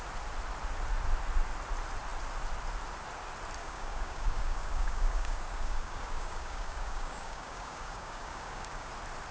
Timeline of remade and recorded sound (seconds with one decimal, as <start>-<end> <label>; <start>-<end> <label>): 0.0-3.6 recorded; 3.6-8.9 remade; 8.9-9.3 recorded